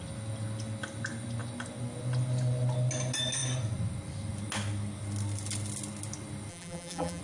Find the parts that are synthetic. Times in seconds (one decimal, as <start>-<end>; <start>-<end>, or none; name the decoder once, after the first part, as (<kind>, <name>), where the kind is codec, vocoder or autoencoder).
6.5-7.2 (vocoder, BigVGAN v2)